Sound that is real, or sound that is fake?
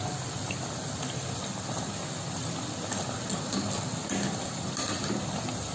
real